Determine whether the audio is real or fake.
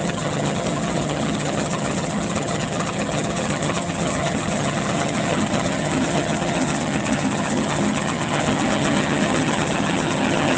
fake